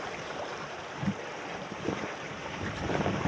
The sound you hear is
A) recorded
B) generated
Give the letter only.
B